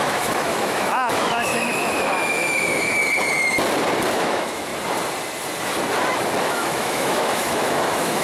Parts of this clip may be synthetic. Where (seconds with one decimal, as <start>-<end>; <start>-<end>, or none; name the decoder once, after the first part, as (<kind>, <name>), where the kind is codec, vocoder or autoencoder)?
0.0-3.0 (autoencoder, DAC-VAE); 4.1-4.7; 6.4-8.2